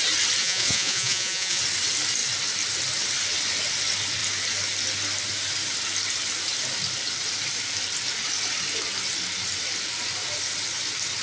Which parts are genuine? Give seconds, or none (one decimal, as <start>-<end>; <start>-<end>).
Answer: 0.0-0.4; 1.6-11.2